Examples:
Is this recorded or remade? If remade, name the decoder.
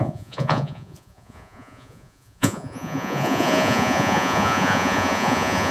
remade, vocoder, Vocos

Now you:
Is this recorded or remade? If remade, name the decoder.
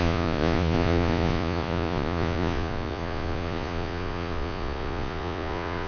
remade, vocoder, Vocos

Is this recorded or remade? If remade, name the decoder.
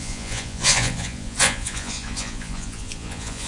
remade, vocoder, Vocos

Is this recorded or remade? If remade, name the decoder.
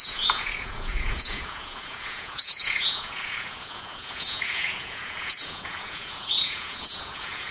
remade, vocoder, Vocos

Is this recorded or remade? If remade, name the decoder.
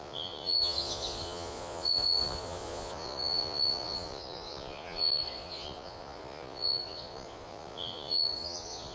remade, vocoder, Vocos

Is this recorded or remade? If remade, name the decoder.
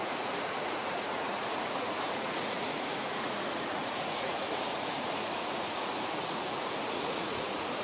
remade, vocoder, Vocos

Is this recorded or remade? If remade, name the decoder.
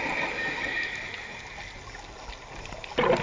recorded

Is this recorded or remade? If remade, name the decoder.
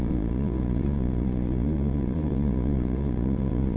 remade, vocoder, Vocos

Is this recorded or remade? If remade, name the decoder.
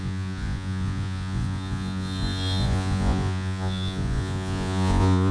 remade, vocoder, Vocos